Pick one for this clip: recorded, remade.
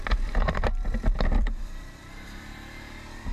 remade